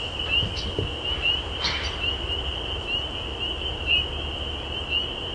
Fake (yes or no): no